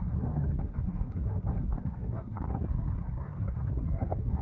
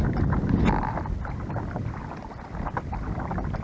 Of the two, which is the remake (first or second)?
first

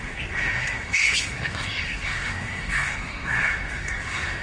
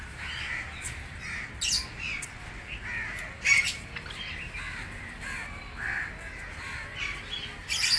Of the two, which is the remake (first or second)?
first